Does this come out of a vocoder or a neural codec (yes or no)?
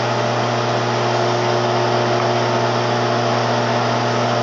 no